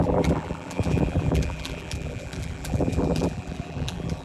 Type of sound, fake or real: fake